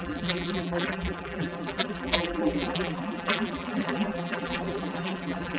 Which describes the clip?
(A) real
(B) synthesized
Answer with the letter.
B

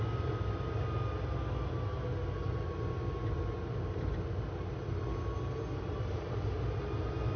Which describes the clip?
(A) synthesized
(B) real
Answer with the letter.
B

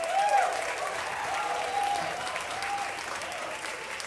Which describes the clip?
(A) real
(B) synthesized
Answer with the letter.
A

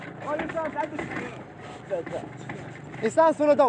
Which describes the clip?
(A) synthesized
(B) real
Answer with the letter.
B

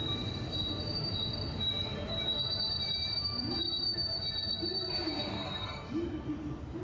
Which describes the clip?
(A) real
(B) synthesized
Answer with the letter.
B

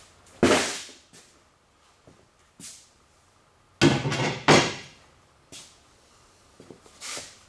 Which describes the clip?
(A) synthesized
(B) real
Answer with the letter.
B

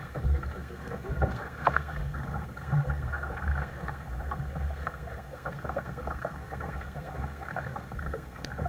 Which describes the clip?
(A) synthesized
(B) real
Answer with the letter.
A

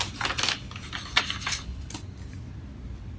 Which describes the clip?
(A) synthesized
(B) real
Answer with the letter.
B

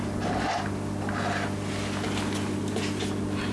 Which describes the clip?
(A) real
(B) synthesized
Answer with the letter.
A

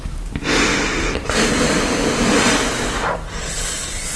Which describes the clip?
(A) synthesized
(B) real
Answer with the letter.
A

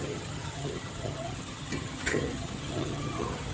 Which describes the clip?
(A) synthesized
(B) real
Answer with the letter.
A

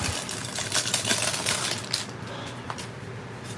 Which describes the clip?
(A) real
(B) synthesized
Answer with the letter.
A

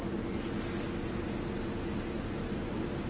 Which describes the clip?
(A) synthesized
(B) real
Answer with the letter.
B